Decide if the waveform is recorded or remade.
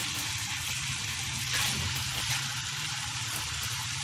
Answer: recorded